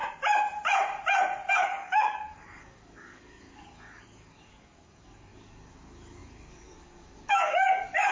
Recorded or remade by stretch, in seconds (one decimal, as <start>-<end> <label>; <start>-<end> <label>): 0.0-1.5 recorded; 1.5-8.1 remade